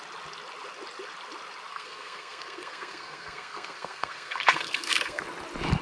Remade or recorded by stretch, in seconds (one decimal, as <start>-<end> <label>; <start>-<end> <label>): 0.0-1.7 recorded; 1.7-5.2 remade; 5.2-5.8 recorded